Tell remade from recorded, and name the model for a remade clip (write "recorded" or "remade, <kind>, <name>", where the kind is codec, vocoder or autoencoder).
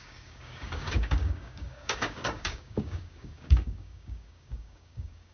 remade, codec, DAC